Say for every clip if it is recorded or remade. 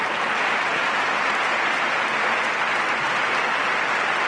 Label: recorded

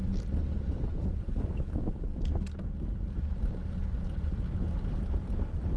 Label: recorded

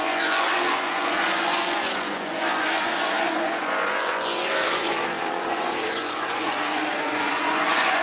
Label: remade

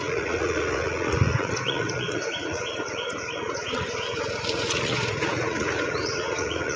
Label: remade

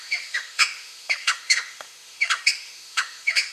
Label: remade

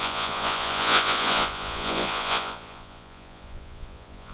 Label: remade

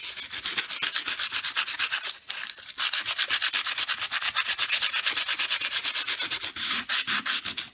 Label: recorded